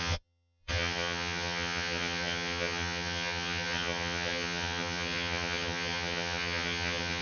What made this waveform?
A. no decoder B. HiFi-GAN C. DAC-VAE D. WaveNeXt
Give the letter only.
B